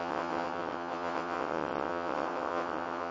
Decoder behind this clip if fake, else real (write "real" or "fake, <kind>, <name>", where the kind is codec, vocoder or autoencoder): fake, vocoder, WaveNeXt